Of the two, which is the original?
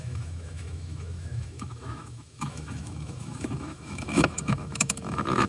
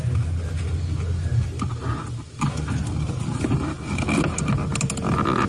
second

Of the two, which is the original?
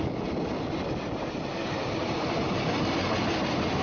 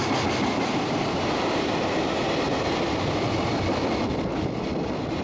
first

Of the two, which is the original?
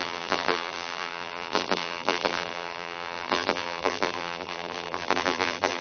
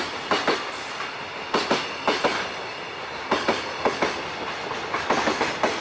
second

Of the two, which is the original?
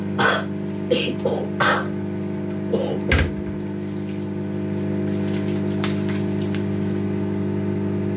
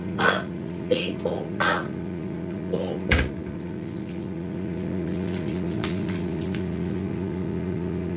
first